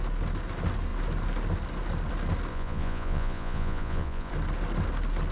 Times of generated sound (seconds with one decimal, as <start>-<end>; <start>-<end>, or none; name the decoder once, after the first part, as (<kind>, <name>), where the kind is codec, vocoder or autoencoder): 2.5-4.3 (vocoder, Vocos)